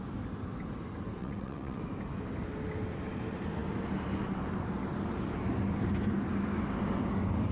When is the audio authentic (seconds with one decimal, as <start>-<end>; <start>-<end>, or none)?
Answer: 0.0-1.2; 1.8-7.5